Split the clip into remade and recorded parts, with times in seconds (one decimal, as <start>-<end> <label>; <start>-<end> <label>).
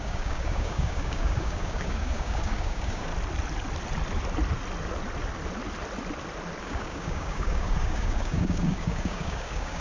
0.0-3.1 remade; 3.1-6.6 recorded; 6.6-9.8 remade